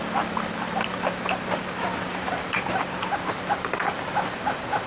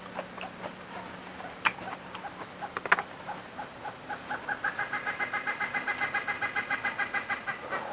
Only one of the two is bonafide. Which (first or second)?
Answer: second